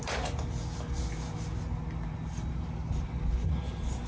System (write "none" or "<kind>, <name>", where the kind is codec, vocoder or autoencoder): none